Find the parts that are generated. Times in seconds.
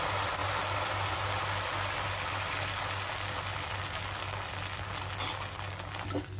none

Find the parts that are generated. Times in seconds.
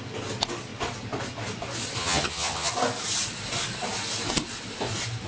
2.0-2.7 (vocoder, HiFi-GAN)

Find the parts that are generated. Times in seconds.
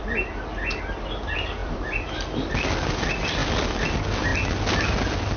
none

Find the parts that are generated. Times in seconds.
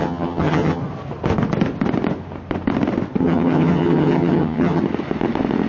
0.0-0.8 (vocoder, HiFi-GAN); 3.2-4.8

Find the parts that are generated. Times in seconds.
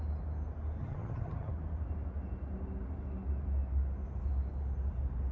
0.8-1.5 (vocoder, HiFi-GAN)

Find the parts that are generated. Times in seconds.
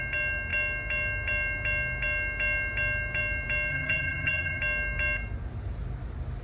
3.7-4.6 (vocoder, HiFi-GAN)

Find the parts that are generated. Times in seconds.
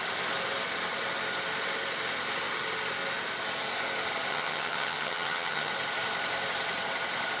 4.3-5.7 (vocoder, HiFi-GAN)